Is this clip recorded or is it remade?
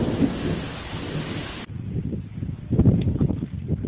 recorded